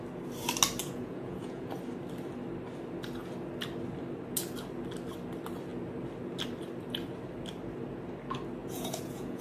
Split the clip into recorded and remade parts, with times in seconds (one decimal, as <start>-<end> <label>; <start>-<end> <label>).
0.0-0.8 recorded; 0.8-1.7 remade; 1.7-8.6 recorded; 8.6-9.4 remade